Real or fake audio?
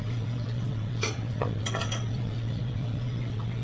fake